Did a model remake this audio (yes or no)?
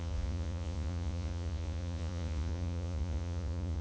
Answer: yes